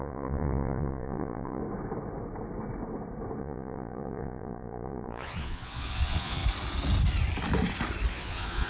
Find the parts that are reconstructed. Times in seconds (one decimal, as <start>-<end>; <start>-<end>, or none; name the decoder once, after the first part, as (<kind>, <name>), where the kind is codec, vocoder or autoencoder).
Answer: 0.0-1.6 (vocoder, Vocos); 3.4-6.4; 8.1-8.7